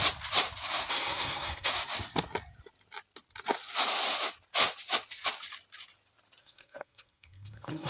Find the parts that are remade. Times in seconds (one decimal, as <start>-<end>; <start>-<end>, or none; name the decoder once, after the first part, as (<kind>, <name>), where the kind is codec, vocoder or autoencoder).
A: 0.9-1.7 (codec, SNAC); 6.4-7.9